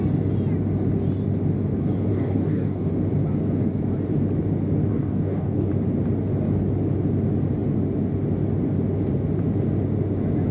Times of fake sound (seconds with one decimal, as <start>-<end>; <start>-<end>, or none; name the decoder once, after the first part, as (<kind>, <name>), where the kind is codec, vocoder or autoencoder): 2.1-2.9 (codec, DAC); 4.9-5.7